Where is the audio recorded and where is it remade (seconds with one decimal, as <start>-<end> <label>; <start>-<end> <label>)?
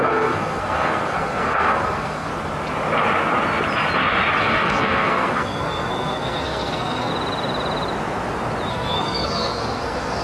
0.0-2.3 remade; 2.3-4.4 recorded; 4.4-7.1 remade; 7.1-8.7 recorded; 8.7-10.2 remade